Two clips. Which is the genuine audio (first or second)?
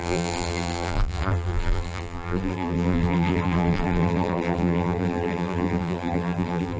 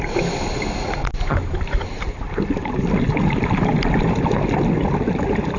second